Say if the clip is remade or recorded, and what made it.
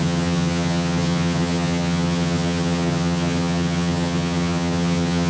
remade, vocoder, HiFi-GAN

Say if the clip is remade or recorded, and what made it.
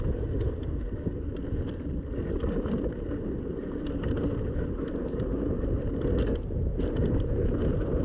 recorded